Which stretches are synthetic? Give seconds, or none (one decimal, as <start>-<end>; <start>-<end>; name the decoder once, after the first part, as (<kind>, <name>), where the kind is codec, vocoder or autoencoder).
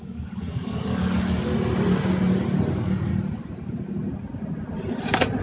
0.0-1.5 (codec, DAC); 2.7-3.1